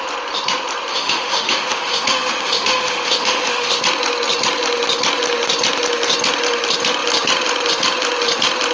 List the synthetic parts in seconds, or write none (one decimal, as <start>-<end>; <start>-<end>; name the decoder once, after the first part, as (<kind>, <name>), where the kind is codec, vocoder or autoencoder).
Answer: 0.9-3.8 (autoencoder, DAC-VAE)